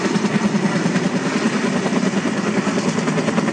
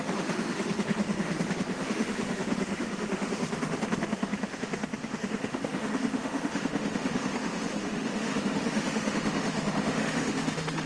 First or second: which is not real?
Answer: second